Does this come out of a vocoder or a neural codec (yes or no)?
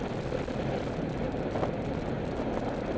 no